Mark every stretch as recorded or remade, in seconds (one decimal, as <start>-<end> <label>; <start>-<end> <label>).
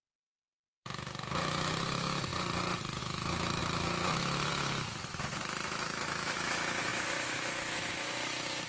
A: 0.0-2.3 remade; 2.3-3.0 recorded; 3.0-8.7 remade